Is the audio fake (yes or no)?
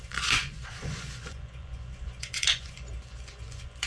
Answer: yes